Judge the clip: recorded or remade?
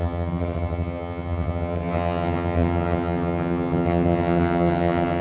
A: remade